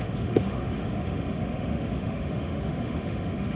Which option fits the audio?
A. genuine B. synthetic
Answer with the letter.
B